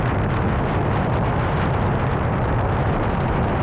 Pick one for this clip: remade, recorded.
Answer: recorded